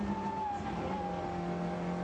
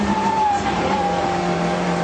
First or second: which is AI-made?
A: second